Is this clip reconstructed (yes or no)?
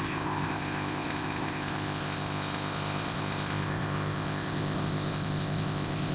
yes